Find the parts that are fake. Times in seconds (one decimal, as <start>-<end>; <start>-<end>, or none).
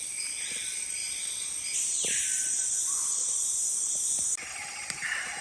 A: none